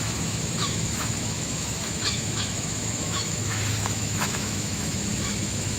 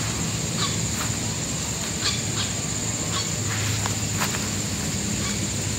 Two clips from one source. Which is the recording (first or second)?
second